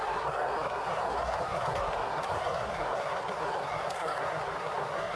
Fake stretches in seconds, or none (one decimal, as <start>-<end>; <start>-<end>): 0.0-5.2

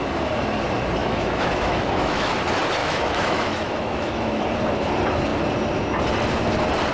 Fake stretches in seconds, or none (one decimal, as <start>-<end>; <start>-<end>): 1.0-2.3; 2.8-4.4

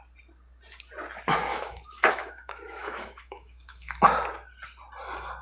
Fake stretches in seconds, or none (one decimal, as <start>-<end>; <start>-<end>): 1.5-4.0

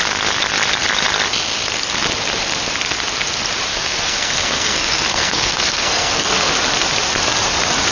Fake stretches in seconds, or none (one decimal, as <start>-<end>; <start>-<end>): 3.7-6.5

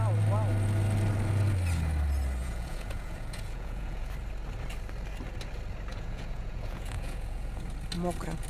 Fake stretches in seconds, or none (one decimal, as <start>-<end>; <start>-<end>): 2.4-4.1; 5.9-7.6